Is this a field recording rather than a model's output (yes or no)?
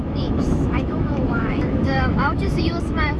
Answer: no